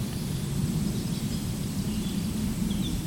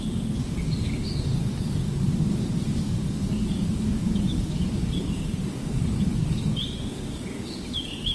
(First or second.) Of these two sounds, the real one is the first